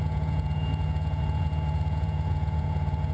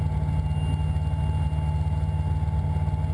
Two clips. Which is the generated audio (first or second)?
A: first